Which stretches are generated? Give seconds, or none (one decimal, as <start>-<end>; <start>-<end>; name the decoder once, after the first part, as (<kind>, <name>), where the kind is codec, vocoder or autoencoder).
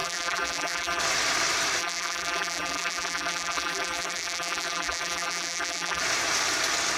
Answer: 0.0-1.0 (vocoder, BigVGAN v2); 1.8-6.0